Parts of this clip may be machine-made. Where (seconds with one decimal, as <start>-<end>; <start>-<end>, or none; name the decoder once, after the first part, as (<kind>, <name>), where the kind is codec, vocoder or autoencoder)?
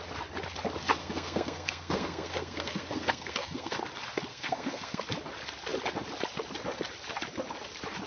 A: 1.0-3.8 (codec, SNAC); 4.3-5.0